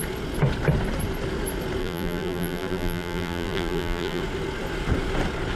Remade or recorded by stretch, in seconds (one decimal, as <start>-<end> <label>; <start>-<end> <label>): 0.0-1.8 recorded; 1.8-4.2 remade; 4.2-5.6 recorded